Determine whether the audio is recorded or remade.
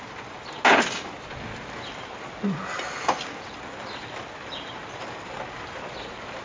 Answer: recorded